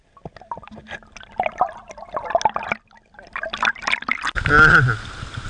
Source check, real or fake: real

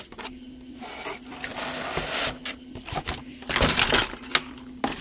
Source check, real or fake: real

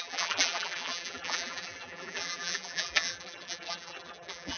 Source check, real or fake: fake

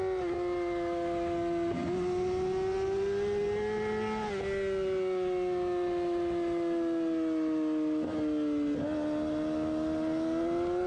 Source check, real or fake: real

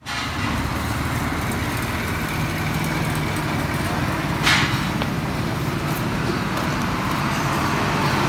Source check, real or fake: real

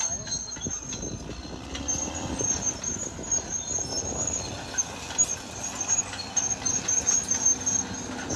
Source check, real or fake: real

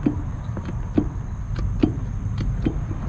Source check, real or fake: real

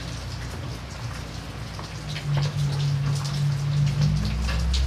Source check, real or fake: real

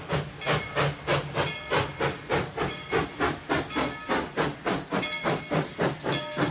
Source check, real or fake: real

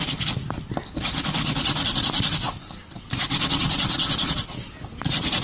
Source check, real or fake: real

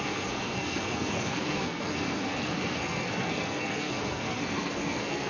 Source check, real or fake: fake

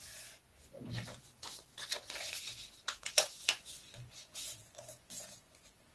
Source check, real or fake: fake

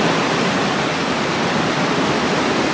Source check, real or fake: real